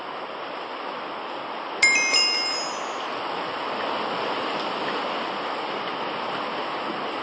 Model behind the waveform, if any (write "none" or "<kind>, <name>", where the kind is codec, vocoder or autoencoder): none